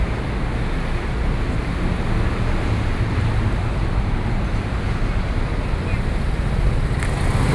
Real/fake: real